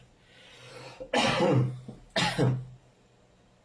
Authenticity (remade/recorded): recorded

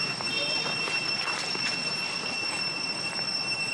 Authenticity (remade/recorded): recorded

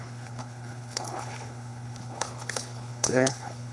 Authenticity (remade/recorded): remade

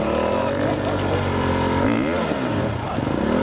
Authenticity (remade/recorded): recorded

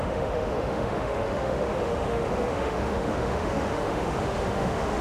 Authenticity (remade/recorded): remade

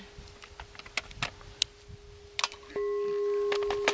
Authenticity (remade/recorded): recorded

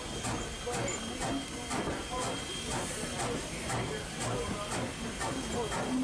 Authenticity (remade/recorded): recorded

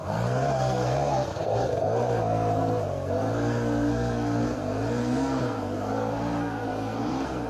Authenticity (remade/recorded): remade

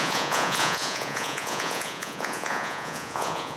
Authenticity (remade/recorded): remade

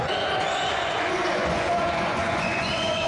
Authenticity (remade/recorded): remade